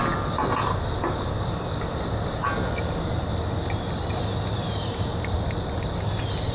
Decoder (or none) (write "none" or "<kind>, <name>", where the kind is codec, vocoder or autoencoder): none